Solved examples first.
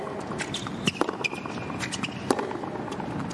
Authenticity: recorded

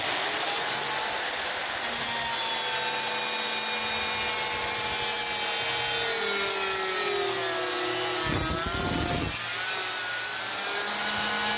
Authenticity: recorded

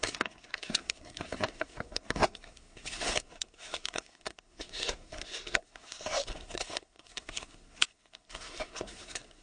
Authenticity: remade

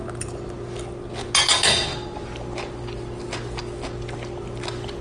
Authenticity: recorded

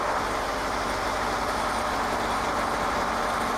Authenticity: remade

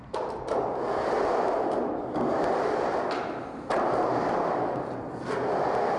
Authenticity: recorded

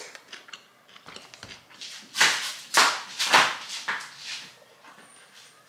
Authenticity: recorded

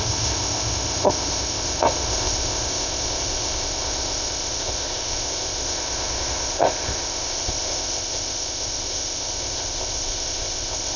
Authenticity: remade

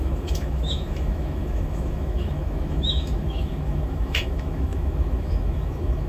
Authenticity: remade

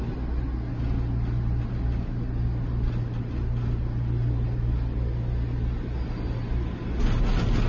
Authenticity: recorded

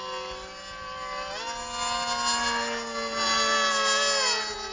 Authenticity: recorded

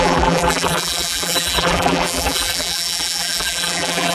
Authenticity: remade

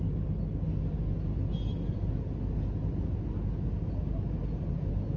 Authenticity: recorded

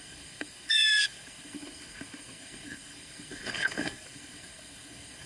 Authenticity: remade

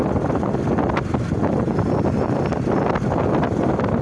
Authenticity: recorded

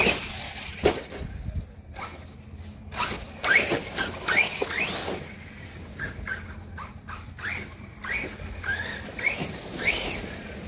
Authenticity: recorded